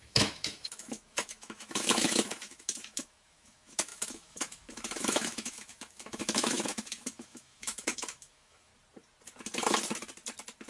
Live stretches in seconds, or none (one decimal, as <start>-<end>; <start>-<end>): 8.7-10.7